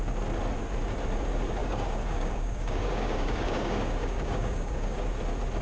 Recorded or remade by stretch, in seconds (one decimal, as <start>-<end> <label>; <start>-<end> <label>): 0.0-1.6 recorded; 1.6-5.0 remade; 5.0-5.6 recorded

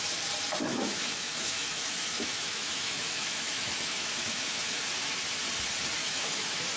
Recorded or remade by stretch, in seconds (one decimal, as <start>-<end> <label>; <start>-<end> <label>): 0.0-0.7 recorded; 0.7-4.8 remade; 4.8-6.0 recorded; 6.0-6.8 remade

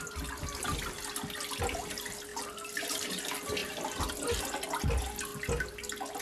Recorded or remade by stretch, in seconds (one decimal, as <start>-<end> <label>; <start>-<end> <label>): 0.0-2.3 recorded; 2.3-3.2 remade; 3.2-6.2 recorded

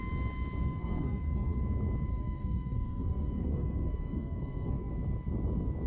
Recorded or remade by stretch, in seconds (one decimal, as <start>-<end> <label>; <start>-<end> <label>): 0.0-0.6 recorded; 0.6-1.6 remade; 1.6-2.1 recorded; 2.1-4.9 remade; 4.9-5.9 recorded

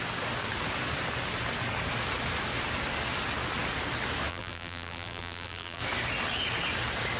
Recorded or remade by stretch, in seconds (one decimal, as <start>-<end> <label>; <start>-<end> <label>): 0.0-4.3 recorded; 4.3-5.8 remade; 5.8-7.2 recorded

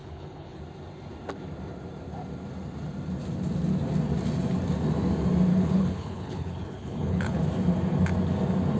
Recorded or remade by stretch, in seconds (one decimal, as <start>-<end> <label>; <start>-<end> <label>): 0.0-0.6 remade; 0.6-5.5 recorded; 5.5-7.4 remade; 7.4-8.8 recorded

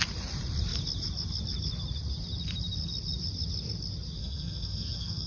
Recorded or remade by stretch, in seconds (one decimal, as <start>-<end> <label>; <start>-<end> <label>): 0.0-4.2 recorded; 4.2-5.3 remade